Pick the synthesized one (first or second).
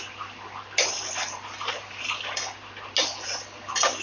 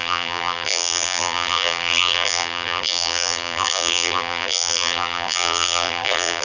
second